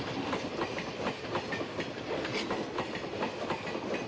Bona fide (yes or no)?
yes